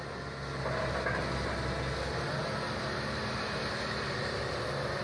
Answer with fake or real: real